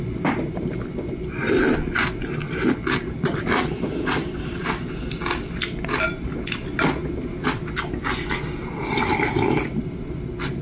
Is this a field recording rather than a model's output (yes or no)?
yes